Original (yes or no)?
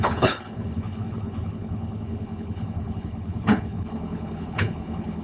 no